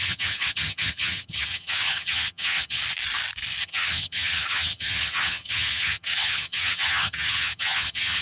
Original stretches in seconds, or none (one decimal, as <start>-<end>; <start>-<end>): 2.8-3.6